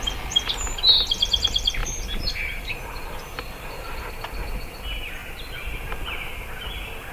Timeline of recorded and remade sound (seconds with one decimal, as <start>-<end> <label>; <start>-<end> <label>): 0.0-1.8 recorded; 1.8-4.1 remade; 4.1-7.1 recorded